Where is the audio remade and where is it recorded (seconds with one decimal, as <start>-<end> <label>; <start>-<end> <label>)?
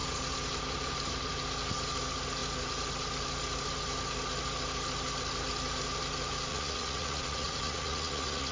0.0-6.5 recorded; 6.5-8.5 remade